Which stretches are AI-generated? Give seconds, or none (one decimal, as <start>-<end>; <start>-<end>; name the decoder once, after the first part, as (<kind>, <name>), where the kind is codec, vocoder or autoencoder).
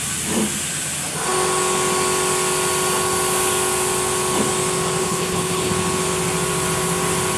5.0-5.7 (codec, HILCodec)